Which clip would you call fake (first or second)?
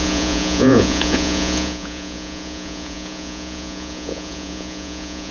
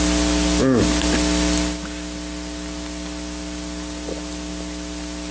first